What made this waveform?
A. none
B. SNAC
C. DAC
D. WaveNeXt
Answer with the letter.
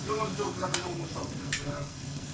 B